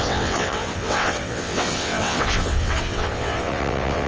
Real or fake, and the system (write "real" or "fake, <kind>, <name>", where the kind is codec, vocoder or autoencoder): fake, vocoder, WaveNeXt